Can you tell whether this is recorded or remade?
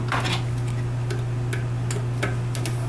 recorded